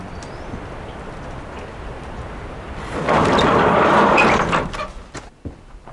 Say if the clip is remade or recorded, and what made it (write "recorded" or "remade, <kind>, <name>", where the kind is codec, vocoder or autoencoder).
recorded